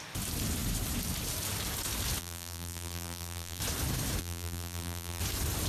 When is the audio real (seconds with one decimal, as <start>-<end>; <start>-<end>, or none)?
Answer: 0.0-2.2; 3.6-4.2; 5.2-5.7